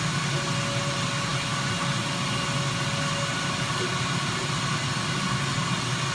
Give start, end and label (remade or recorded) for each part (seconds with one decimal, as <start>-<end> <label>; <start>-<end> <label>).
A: 0.0-6.1 recorded